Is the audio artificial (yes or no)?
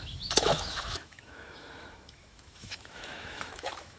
yes